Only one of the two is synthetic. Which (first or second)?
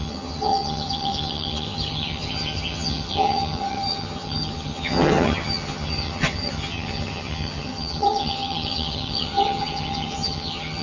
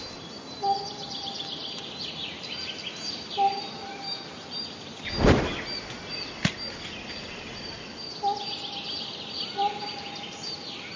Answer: first